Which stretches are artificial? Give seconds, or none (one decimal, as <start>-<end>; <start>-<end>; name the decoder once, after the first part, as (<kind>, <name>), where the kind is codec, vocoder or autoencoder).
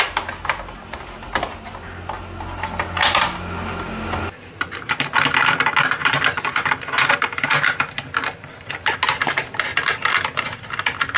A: 6.0-7.8 (vocoder, BigVGAN v2); 9.7-11.2